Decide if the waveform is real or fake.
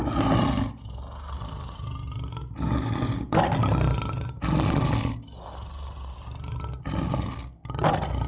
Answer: real